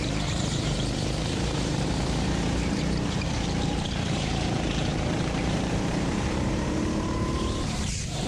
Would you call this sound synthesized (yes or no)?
yes